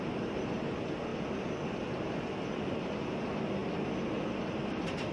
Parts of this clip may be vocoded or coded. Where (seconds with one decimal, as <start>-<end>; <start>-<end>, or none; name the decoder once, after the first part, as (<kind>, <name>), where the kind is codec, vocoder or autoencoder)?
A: 0.0-3.6 (vocoder, BigVGAN v2); 4.3-5.1